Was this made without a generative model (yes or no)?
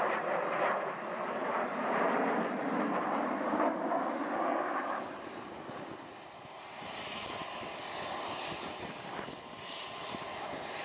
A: yes